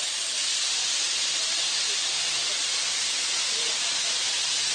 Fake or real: real